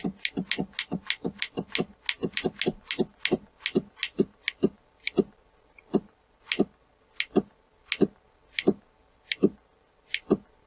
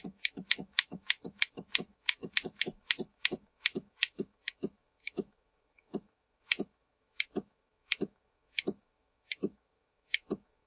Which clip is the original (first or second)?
first